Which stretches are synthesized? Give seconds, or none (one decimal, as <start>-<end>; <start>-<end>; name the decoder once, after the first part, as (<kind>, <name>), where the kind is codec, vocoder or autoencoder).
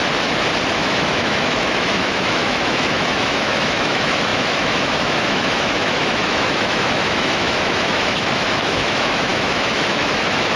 0.7-10.6 (autoencoder, DAC-VAE)